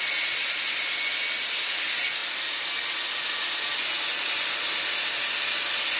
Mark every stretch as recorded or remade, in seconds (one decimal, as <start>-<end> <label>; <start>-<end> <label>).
0.0-6.0 recorded